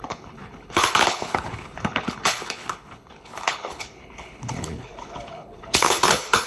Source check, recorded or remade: remade